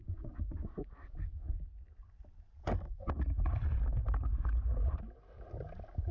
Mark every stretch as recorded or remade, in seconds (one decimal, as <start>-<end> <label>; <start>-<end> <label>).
0.0-6.1 recorded